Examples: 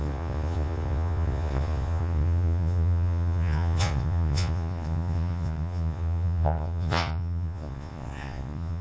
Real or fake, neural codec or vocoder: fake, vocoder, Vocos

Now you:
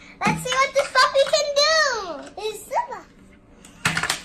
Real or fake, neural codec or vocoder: real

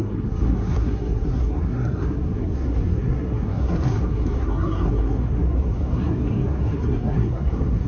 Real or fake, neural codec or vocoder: fake, codec, SNAC